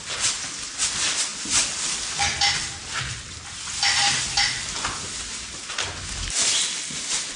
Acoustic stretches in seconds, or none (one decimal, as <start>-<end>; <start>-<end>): 0.0-7.4